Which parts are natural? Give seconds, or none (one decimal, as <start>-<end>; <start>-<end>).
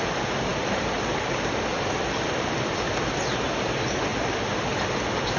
0.0-0.5; 1.1-1.7; 3.4-4.1; 4.8-5.4